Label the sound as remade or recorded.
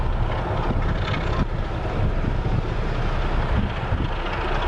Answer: recorded